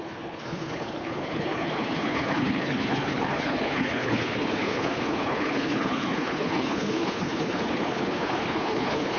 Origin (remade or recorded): remade